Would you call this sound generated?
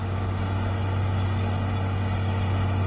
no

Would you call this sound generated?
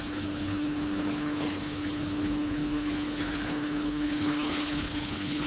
yes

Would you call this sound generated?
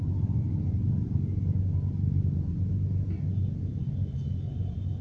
no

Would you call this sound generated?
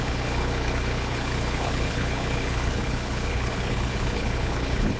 yes